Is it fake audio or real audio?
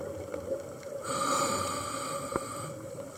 real